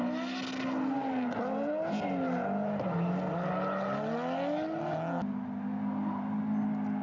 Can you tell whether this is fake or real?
real